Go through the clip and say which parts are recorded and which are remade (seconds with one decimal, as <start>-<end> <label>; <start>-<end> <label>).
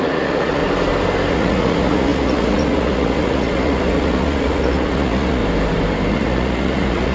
0.0-0.6 remade; 0.6-1.3 recorded; 1.3-5.4 remade; 5.4-6.1 recorded; 6.1-7.1 remade